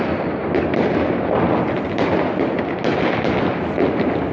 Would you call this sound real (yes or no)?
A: yes